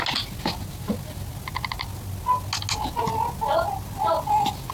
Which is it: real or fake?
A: real